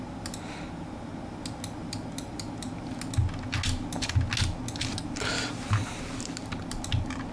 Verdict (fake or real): real